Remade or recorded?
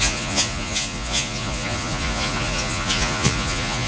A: remade